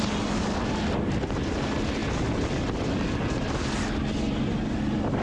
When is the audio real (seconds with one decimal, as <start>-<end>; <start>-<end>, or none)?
0.0-5.2